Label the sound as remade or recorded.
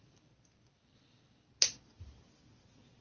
recorded